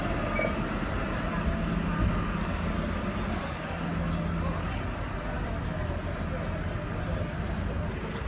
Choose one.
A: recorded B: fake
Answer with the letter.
A